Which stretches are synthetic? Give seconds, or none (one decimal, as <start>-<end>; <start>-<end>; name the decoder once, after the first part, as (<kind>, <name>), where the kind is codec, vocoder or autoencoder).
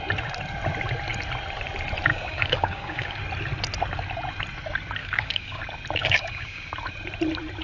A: 2.1-3.2 (codec, DAC); 5.0-5.6; 6.0-6.7